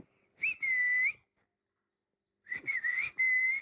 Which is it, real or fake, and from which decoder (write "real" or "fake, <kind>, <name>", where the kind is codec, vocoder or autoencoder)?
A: real